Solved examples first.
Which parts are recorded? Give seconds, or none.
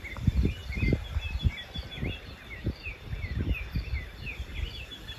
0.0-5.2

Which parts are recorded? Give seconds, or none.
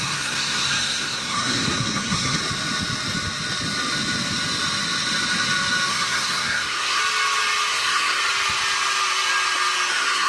2.4-5.9; 7.0-7.7; 8.2-9.9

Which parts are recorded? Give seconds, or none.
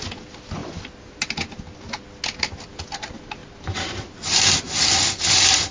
0.0-5.7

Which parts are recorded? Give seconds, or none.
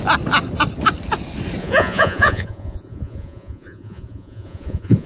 0.0-1.6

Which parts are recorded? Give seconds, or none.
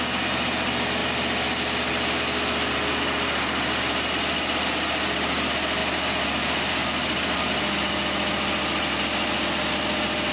0.0-10.3